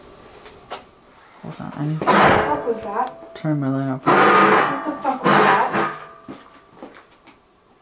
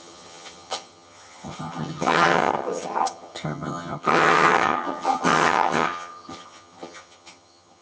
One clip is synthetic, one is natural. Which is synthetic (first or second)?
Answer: second